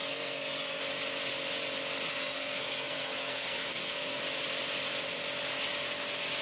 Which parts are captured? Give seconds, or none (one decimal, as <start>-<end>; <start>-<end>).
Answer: 0.8-2.1; 4.2-6.4